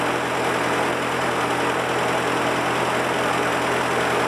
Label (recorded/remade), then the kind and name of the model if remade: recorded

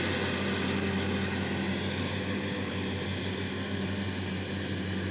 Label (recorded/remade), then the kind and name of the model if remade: recorded